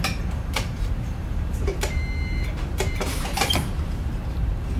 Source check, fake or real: fake